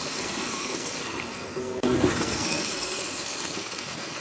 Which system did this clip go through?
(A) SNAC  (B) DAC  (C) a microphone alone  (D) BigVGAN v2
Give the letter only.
A